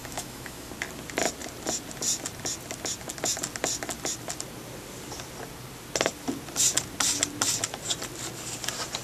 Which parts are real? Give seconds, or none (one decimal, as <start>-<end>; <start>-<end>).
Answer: 0.7-9.0